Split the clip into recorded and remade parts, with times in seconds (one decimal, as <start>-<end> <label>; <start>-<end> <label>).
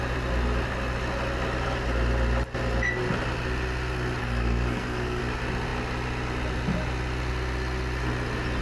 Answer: 0.0-4.2 recorded; 4.2-5.2 remade; 5.2-8.6 recorded